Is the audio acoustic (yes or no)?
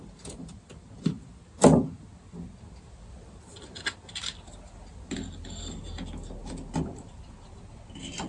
yes